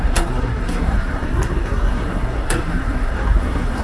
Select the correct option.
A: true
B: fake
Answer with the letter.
B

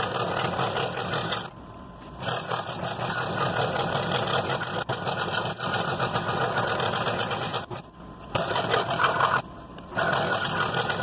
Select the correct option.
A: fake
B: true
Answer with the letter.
B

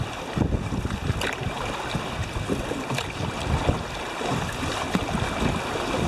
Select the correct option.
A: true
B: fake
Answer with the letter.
A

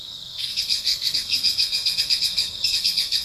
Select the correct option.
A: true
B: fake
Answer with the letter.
B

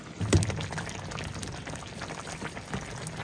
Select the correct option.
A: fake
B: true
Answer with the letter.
B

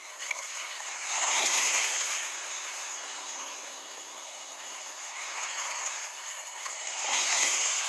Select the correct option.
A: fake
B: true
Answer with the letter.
A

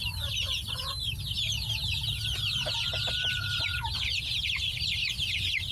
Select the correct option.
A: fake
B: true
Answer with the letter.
B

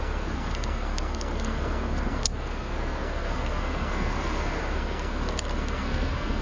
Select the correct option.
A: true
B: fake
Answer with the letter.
B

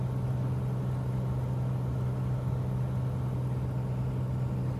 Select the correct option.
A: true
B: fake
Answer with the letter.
A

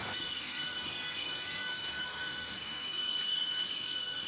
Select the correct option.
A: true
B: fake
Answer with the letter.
B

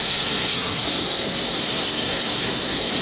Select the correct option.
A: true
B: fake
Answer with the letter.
B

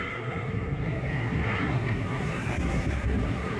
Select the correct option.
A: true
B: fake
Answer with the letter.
B